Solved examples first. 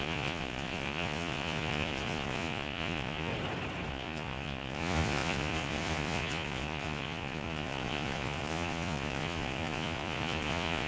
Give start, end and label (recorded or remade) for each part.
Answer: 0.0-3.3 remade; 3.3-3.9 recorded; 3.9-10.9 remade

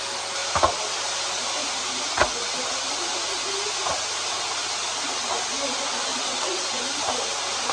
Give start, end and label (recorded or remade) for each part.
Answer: 0.0-6.1 recorded; 6.1-6.8 remade; 6.8-7.7 recorded

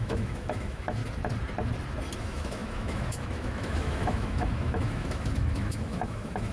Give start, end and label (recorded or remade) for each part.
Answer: 0.0-1.0 remade; 1.0-2.2 recorded; 2.2-6.5 remade

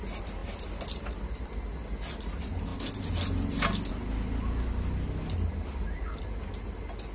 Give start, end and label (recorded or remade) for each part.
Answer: 0.0-7.1 recorded

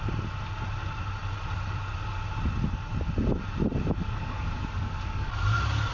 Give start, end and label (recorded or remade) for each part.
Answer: 0.0-4.0 recorded; 4.0-5.3 remade; 5.3-5.9 recorded

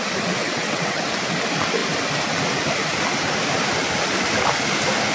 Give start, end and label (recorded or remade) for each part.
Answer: 0.0-0.4 recorded; 0.4-1.0 remade; 1.0-5.1 recorded

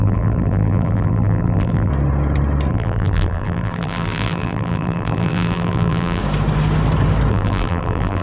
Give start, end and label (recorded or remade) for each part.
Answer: 0.0-1.9 remade; 1.9-2.7 recorded; 2.7-6.2 remade; 6.2-7.3 recorded; 7.3-8.2 remade